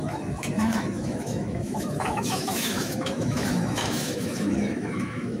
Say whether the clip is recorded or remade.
remade